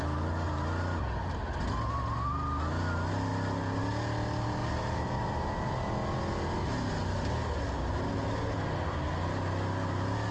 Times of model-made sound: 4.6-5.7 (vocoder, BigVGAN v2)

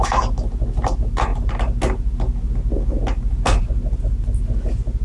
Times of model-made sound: none

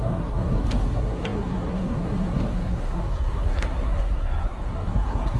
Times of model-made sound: 0.0-5.4 (codec, SNAC)

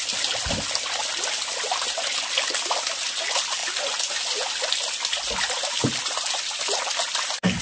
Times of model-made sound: none